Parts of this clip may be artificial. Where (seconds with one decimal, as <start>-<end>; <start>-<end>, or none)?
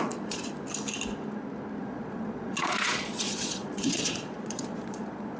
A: 0.0-0.5; 1.8-5.4